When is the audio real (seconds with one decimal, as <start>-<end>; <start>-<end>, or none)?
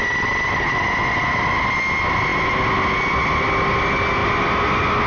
0.0-5.1